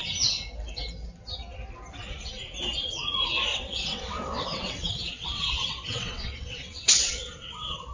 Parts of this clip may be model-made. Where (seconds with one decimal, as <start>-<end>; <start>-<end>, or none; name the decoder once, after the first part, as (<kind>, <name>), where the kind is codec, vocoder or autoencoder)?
3.5-7.9 (vocoder, WaveNeXt)

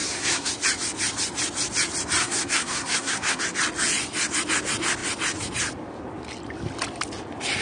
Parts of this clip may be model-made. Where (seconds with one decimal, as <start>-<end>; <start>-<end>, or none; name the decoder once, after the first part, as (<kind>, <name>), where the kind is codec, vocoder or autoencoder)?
0.0-0.5 (codec, SNAC); 2.2-3.4

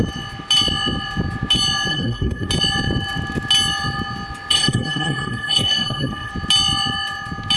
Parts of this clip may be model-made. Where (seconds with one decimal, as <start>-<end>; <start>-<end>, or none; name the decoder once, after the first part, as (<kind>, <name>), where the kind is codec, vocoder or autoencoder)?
1.9-2.5 (codec, SNAC); 4.5-6.3

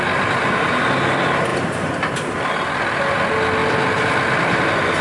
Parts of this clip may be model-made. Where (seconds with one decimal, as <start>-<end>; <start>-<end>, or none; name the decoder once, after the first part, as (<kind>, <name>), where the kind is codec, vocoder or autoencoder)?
none

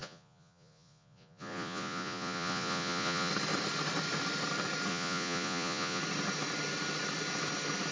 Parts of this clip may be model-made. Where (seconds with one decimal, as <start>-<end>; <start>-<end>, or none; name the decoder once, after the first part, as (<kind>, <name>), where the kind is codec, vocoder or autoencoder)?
0.0-3.3 (vocoder, Vocos); 4.9-6.0

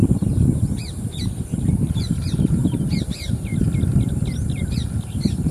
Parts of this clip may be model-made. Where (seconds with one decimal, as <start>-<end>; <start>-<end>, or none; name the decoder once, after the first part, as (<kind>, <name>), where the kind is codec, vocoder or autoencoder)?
0.0-3.5 (vocoder, BigVGAN v2); 4.1-5.5

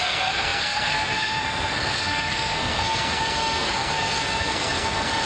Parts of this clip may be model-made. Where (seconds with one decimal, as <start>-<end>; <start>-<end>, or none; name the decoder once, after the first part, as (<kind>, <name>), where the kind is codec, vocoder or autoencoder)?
0.0-5.3 (codec, SNAC)

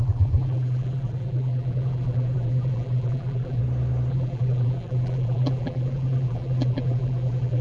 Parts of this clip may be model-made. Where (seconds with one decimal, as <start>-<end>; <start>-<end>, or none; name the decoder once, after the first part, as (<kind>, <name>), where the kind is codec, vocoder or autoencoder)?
0.0-3.6 (vocoder, BigVGAN v2); 4.1-7.6